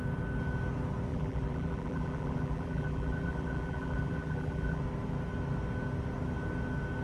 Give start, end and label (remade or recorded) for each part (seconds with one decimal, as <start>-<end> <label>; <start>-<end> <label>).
0.0-1.1 recorded; 1.1-4.8 remade; 4.8-7.0 recorded